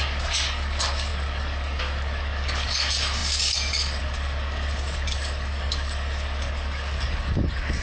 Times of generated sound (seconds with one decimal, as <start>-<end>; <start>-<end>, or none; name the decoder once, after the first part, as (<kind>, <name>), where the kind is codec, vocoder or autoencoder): 0.0-7.8 (codec, DAC)